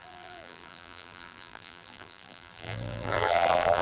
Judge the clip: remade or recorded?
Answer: remade